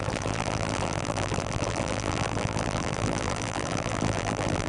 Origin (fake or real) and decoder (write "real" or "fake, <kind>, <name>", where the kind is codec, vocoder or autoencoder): fake, vocoder, BigVGAN v2